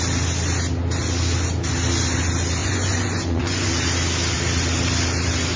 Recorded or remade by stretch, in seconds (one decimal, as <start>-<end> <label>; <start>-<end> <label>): 0.0-2.6 recorded; 2.6-3.7 remade; 3.7-5.6 recorded